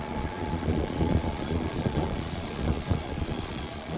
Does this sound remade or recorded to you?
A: remade